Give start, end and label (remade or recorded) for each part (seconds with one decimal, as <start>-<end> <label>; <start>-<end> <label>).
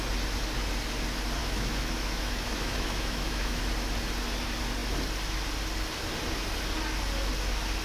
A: 0.0-1.4 recorded; 1.4-3.6 remade; 3.6-7.8 recorded